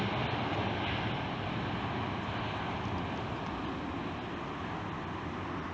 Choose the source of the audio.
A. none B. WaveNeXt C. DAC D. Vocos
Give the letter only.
A